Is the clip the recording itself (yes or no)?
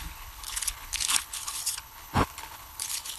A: no